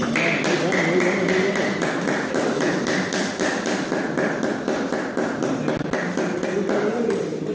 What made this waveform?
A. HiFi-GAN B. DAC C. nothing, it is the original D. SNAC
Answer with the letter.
C